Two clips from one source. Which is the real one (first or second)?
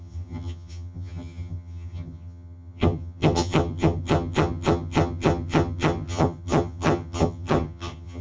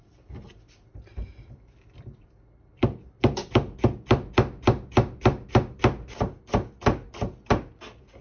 second